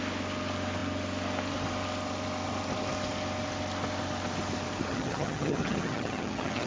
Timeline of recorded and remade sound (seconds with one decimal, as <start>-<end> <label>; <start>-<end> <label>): 0.0-4.9 recorded; 4.9-6.7 remade